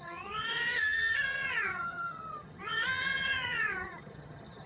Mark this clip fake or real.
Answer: fake